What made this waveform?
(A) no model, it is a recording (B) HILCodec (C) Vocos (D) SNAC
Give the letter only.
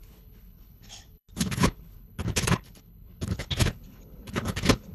B